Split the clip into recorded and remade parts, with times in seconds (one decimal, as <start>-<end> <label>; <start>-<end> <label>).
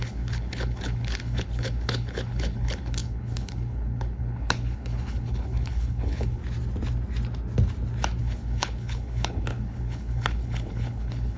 0.0-6.4 remade; 6.4-8.2 recorded; 8.2-11.4 remade